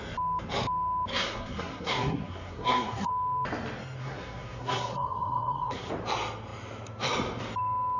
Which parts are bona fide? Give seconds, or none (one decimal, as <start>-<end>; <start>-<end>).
0.0-1.1; 3.1-4.0; 5.9-8.0